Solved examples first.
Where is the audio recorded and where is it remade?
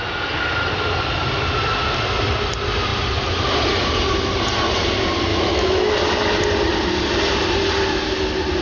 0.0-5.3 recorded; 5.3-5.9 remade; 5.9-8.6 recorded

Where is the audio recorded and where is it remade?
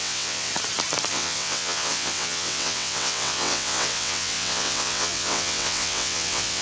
0.0-0.5 remade; 0.5-1.1 recorded; 1.1-6.6 remade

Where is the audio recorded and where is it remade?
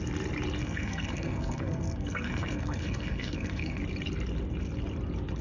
0.0-0.6 recorded; 0.6-3.8 remade; 3.8-5.4 recorded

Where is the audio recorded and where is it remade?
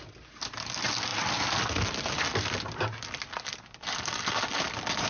0.0-5.1 recorded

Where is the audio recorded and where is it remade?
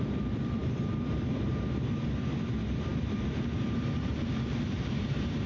0.0-5.5 remade